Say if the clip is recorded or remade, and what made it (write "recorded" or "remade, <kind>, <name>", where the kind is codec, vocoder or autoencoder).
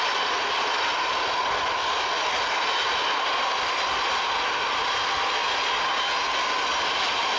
recorded